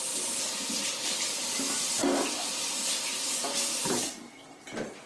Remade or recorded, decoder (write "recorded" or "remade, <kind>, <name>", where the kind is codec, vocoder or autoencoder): recorded